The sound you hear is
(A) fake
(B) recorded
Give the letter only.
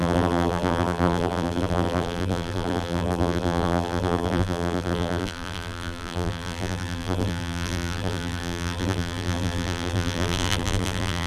A